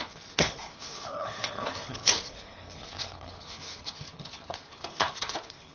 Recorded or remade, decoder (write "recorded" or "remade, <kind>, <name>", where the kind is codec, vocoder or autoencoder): remade, codec, HILCodec